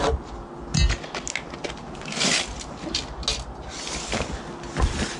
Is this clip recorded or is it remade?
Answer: recorded